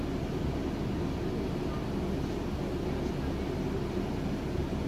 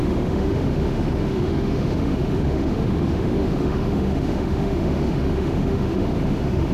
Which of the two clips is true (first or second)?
first